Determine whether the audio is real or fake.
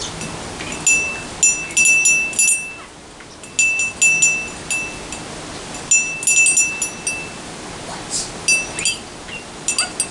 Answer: real